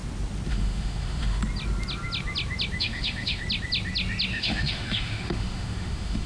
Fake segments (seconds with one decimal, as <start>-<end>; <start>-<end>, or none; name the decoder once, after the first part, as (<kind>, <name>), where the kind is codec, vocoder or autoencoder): 0.5-1.4 (autoencoder, DAC-VAE); 2.8-3.4; 4.3-6.3